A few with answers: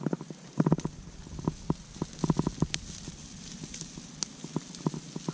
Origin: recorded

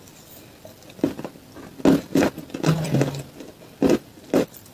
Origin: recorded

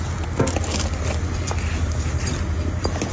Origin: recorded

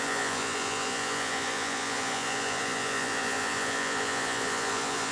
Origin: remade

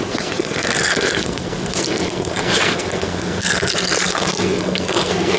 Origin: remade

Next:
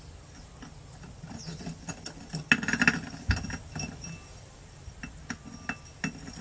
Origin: recorded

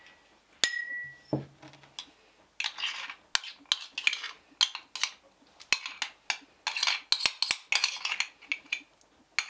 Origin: recorded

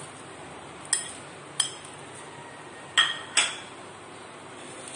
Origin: recorded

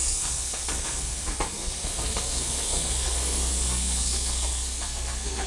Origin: remade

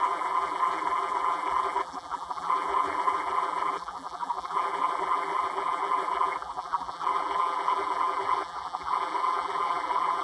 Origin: remade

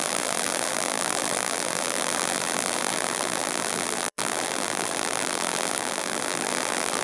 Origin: remade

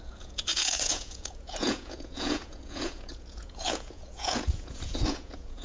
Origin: remade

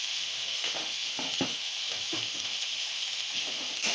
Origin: remade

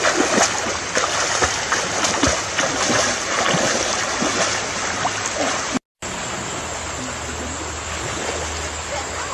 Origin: recorded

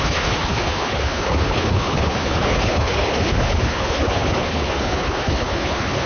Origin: remade